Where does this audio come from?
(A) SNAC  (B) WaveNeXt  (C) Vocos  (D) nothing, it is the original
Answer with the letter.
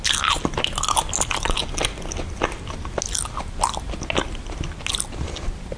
D